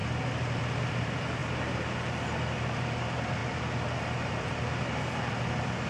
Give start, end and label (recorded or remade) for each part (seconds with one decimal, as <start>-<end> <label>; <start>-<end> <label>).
0.0-0.9 recorded; 0.9-1.4 remade; 1.4-2.8 recorded; 2.8-3.4 remade; 3.4-4.3 recorded; 4.3-5.9 remade